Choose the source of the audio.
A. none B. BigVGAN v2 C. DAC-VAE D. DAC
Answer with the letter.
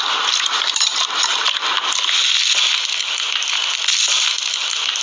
A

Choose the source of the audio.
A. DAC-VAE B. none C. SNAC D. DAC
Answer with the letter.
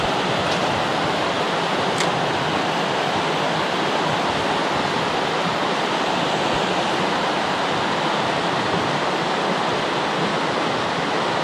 B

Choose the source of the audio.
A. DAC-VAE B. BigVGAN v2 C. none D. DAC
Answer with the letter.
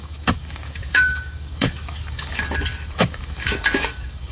D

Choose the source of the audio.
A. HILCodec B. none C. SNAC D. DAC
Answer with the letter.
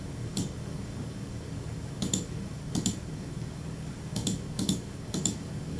D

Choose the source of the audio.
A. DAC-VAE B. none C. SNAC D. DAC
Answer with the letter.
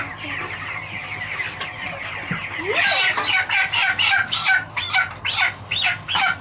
B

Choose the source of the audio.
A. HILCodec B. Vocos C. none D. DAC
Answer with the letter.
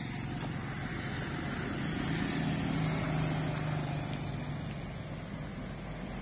C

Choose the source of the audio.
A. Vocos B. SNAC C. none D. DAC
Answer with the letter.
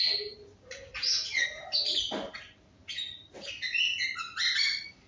C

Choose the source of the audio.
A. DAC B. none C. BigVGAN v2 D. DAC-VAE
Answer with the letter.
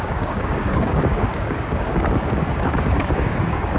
A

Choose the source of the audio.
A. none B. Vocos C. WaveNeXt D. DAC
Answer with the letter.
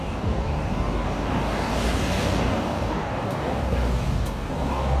D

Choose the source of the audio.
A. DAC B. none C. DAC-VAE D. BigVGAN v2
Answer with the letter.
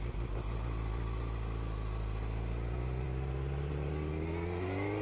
B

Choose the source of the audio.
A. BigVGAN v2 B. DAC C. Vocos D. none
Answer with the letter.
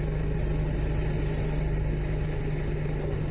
D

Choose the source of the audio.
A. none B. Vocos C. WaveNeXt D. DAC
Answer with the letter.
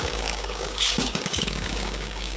D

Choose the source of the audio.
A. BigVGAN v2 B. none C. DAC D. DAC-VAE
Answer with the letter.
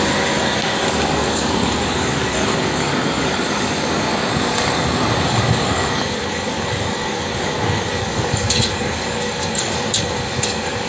C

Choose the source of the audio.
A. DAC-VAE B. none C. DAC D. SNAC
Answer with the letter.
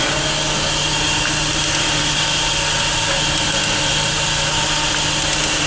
B